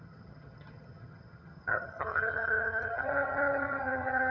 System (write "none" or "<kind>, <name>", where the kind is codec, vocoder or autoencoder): vocoder, HiFi-GAN